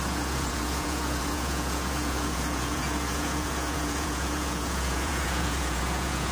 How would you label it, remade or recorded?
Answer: remade